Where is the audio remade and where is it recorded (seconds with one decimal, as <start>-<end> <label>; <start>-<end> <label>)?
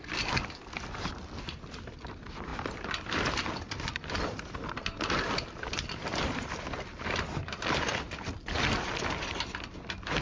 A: 0.0-10.2 recorded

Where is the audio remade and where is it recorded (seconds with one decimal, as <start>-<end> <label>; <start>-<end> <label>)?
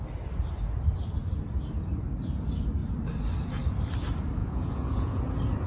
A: 0.0-4.4 recorded; 4.4-5.2 remade; 5.2-5.7 recorded